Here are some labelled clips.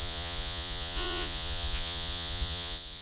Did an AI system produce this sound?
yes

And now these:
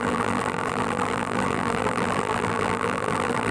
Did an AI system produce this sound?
yes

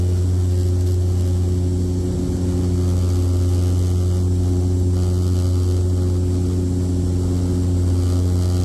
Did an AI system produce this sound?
no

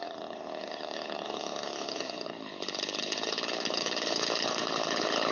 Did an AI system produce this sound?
yes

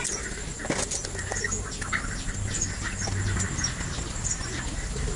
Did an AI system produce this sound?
no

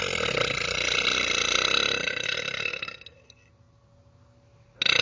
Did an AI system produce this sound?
no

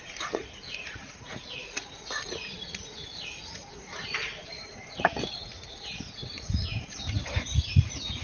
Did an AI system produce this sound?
yes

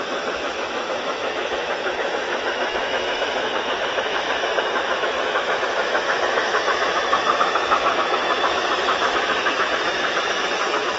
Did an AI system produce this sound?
yes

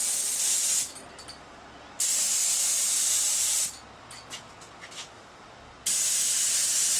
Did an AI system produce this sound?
no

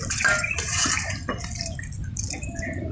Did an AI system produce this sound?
no